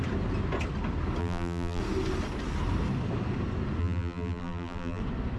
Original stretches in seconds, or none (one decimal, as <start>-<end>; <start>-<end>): 0.0-1.2; 1.8-3.8; 5.0-5.4